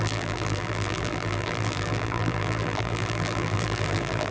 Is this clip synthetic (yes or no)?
yes